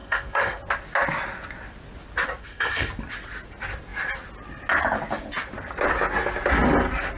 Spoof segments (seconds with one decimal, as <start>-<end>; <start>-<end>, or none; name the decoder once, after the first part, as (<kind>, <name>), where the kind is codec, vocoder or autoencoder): 0.0-0.6 (codec, SNAC); 2.4-2.9